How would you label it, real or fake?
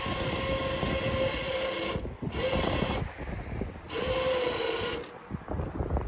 real